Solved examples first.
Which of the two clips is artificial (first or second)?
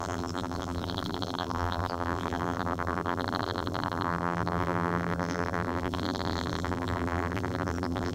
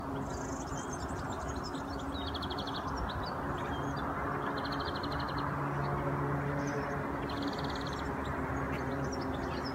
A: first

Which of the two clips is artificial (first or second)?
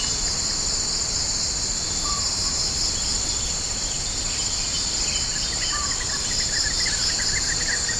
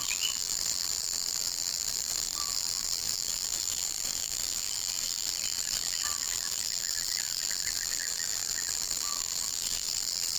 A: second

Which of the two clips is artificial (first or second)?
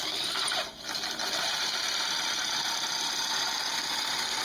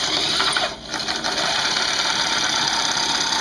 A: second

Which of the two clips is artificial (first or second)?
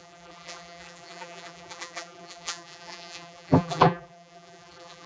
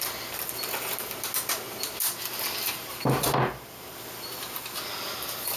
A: first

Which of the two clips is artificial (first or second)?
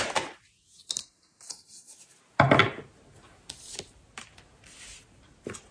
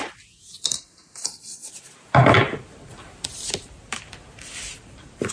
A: second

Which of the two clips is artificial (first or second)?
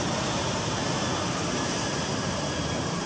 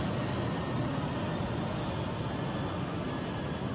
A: first